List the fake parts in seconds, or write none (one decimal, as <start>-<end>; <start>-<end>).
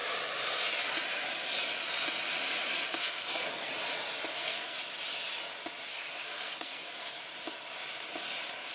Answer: 3.0-3.7; 4.3-4.8; 5.9-7.2